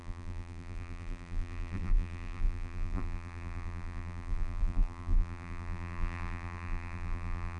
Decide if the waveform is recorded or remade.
remade